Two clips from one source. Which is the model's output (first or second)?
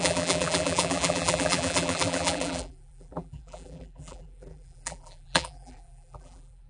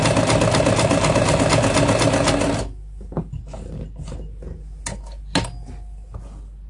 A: first